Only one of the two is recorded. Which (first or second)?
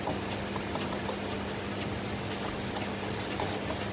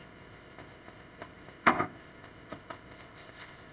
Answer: first